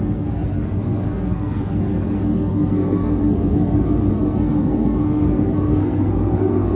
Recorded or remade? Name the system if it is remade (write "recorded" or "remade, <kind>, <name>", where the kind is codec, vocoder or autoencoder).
remade, codec, SNAC